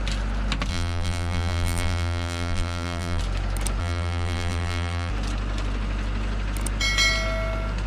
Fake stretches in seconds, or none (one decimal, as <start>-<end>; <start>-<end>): 0.7-3.2; 3.8-5.1